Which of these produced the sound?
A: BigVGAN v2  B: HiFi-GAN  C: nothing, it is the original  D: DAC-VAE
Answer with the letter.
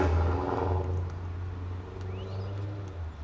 C